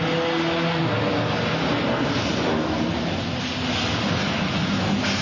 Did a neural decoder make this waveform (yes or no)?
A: no